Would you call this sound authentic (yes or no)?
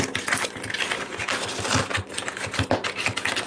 no